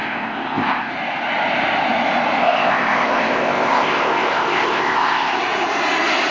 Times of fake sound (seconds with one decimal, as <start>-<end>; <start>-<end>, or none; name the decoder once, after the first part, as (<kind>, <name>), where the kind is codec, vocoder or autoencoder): 0.0-0.9 (codec, ZipCodec); 2.4-5.4